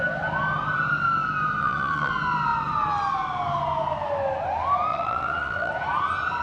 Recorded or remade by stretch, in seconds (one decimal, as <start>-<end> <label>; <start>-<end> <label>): 0.0-1.6 recorded; 1.6-2.1 remade; 2.1-4.9 recorded; 4.9-5.7 remade; 5.7-6.4 recorded